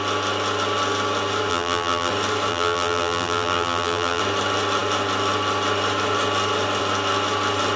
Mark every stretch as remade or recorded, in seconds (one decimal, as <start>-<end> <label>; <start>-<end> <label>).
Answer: 0.0-1.5 recorded; 1.5-2.1 remade; 2.1-2.5 recorded; 2.5-4.2 remade; 4.2-7.8 recorded